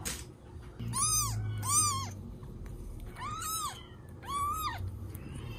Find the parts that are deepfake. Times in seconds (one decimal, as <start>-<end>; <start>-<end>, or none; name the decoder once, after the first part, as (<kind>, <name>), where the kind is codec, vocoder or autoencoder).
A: 2.4-3.1 (vocoder, BigVGAN v2); 4.7-5.6